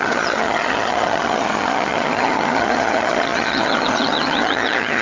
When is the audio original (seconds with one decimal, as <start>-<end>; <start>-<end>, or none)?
none